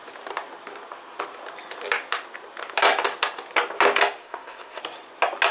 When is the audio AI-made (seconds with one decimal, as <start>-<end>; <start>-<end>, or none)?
4.2-4.8